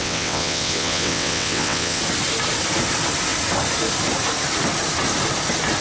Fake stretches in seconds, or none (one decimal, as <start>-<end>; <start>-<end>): 0.0-2.0